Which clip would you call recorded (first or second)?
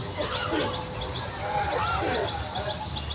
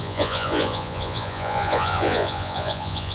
first